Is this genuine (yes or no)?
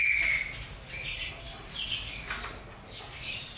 yes